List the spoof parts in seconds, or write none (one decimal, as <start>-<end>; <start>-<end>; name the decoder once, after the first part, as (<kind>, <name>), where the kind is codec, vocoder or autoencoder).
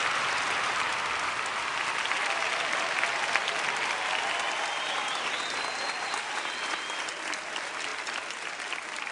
none